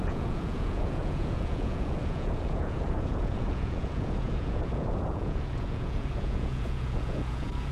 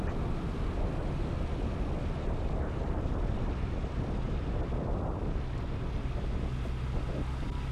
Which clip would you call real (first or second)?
second